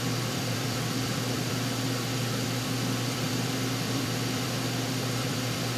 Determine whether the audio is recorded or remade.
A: remade